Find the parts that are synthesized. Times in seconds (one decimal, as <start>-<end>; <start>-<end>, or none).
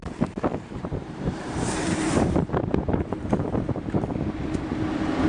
0.5-3.7